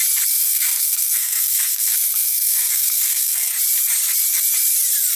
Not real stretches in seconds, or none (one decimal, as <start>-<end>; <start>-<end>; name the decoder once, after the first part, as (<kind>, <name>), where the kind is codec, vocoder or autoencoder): 0.4-3.5 (codec, SNAC)